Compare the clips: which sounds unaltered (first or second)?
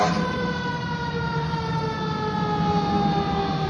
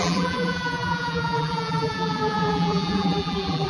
first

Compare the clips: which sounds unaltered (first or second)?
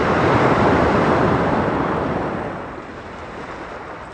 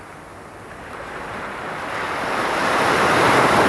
second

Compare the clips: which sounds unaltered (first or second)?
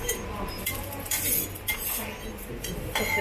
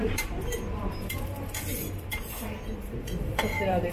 first